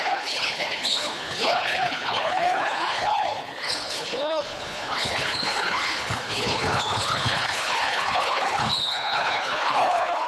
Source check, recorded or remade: remade